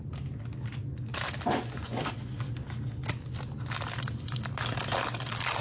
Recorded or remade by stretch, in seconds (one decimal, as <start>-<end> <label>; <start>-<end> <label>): 0.0-1.5 recorded; 1.5-2.3 remade; 2.3-5.6 recorded